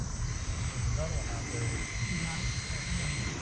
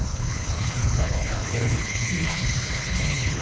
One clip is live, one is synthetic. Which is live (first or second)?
first